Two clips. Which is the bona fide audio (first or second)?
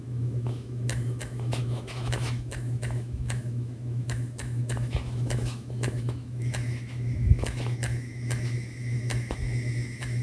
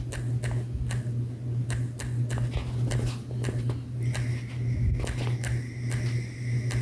second